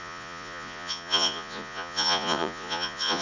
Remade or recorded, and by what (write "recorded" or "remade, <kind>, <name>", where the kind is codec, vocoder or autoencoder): remade, vocoder, Vocos